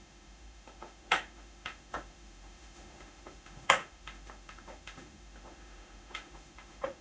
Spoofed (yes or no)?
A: yes